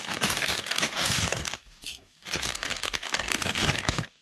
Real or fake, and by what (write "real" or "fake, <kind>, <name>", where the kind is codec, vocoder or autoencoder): fake, codec, DAC